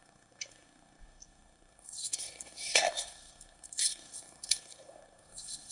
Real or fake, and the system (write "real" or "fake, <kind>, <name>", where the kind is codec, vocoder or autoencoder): fake, codec, SNAC